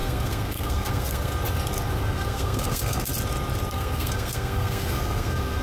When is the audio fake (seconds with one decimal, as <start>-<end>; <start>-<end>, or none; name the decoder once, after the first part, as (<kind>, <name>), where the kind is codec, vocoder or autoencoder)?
0.0-1.3 (codec, SNAC); 1.9-3.1; 3.7-5.6